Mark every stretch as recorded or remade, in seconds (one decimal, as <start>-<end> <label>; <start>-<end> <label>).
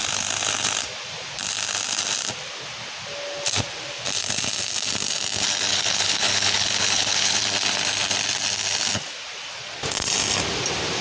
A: 0.0-5.7 recorded; 5.7-7.4 remade; 7.4-11.0 recorded